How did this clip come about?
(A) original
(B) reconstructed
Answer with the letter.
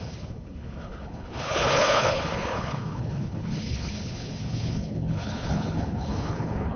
B